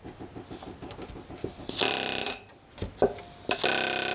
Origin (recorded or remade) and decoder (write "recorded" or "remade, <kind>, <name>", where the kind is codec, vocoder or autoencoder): recorded